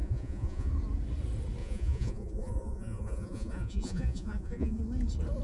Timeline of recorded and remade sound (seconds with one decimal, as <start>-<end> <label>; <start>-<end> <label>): 0.0-0.7 remade; 0.7-1.6 recorded; 1.6-4.8 remade; 4.8-5.4 recorded